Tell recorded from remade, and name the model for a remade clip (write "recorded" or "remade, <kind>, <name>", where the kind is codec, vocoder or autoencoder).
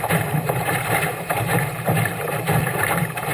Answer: remade, vocoder, BigVGAN v2